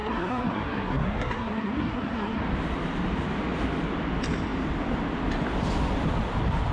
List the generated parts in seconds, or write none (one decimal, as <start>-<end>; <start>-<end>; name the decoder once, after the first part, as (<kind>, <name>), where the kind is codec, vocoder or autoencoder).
0.0-2.4 (codec, SNAC)